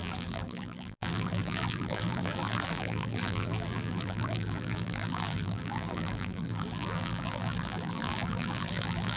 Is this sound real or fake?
fake